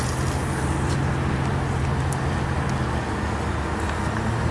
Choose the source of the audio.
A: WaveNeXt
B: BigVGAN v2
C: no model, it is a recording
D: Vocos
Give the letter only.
C